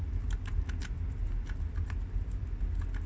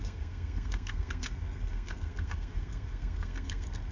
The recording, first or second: first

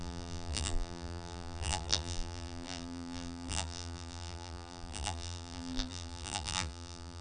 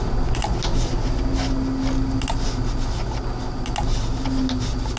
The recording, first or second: second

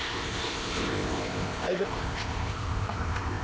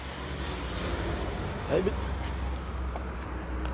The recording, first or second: second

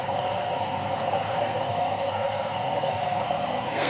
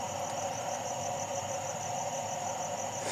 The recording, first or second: second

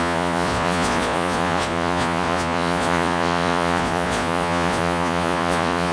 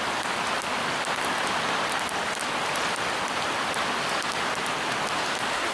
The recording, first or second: second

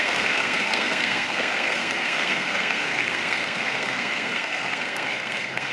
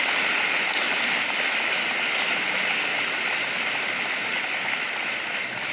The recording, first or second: second